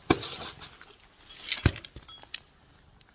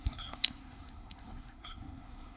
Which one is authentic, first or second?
first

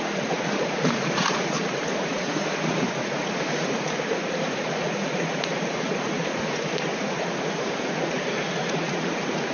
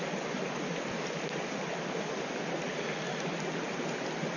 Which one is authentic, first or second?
second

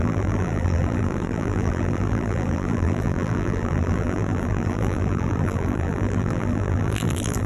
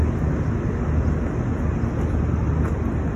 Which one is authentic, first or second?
second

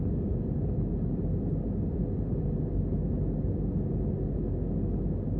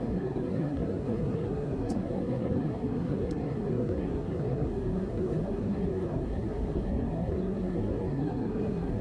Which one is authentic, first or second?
first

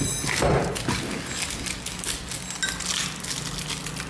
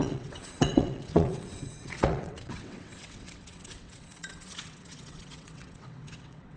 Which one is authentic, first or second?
first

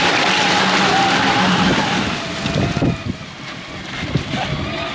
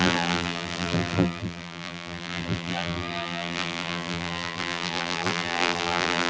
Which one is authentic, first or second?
first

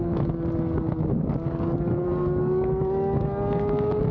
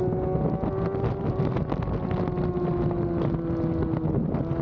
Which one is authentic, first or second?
second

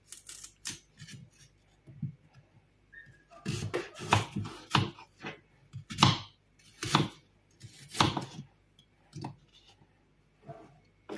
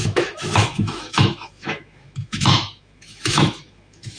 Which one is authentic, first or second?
first